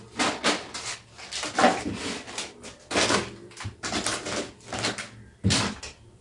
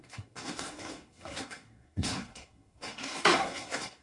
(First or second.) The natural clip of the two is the first